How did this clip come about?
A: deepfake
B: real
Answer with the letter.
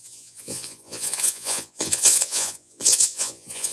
A